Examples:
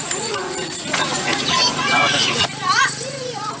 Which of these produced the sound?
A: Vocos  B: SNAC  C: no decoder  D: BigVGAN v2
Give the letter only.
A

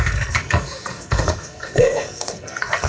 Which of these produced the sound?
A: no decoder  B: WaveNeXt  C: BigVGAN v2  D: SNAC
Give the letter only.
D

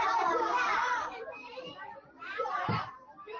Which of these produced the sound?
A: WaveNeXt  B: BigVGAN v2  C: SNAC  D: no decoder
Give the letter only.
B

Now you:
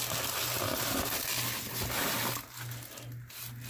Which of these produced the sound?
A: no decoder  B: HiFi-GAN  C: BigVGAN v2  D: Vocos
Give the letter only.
A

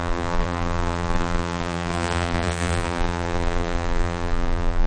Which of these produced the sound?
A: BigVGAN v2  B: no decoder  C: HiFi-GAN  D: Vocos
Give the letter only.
A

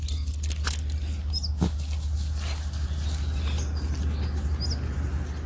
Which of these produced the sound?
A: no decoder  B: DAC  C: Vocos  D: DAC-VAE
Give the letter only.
A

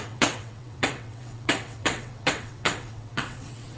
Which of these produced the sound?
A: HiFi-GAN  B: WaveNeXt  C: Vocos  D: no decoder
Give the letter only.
B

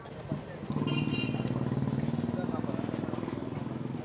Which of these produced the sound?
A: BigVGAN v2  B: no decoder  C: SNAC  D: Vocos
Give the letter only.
B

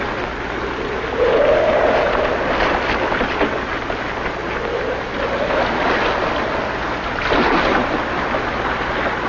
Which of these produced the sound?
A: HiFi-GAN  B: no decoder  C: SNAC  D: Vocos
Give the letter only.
B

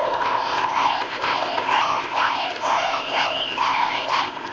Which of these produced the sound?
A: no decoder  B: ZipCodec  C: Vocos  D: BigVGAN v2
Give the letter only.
B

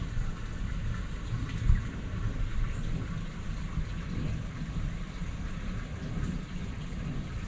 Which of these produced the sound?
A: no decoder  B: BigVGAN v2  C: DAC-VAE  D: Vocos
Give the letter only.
A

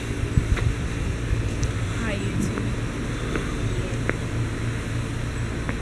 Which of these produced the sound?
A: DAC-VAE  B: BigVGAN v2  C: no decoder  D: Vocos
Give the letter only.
C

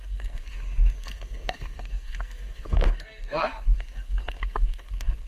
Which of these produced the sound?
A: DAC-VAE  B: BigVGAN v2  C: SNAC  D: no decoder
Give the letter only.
C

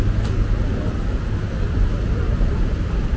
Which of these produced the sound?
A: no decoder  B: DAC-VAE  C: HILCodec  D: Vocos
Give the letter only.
A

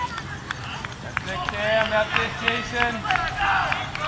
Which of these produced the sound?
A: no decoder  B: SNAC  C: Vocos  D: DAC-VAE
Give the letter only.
A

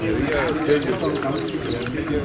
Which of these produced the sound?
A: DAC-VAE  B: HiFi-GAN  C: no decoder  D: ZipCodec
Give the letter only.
C